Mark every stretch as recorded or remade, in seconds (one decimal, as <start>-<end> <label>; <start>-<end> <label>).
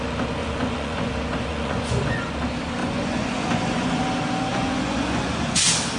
0.0-0.4 recorded; 0.4-1.1 remade; 1.1-1.5 recorded; 1.5-2.4 remade; 2.4-2.8 recorded; 2.8-4.0 remade; 4.0-4.5 recorded; 4.5-5.6 remade; 5.6-6.0 recorded